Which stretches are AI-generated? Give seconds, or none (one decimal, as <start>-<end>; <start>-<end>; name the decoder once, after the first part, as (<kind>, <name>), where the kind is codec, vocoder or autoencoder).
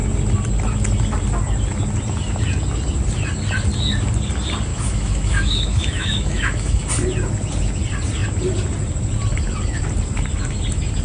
4.7-6.8 (autoencoder, DAC-VAE)